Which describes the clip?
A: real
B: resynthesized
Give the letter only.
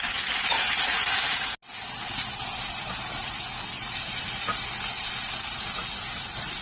A